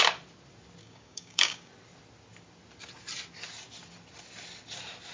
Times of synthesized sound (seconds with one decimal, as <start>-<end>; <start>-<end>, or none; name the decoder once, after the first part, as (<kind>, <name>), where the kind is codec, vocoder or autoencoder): 0.8-1.7 (codec, DAC)